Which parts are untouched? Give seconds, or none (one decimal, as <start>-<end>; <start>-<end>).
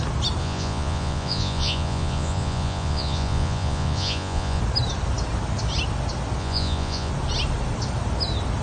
0.0-0.4; 4.6-6.4; 7.1-8.6